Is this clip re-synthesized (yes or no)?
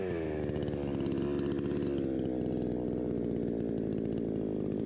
no